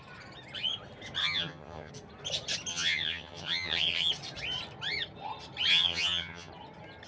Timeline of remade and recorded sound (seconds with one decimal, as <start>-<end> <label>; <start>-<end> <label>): 0.0-1.2 recorded; 1.2-1.9 remade; 1.9-2.7 recorded; 2.7-4.1 remade; 4.1-5.7 recorded; 5.7-6.5 remade; 6.5-7.1 recorded